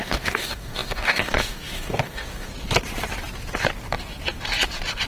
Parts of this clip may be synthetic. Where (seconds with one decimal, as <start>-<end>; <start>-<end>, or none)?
0.0-2.5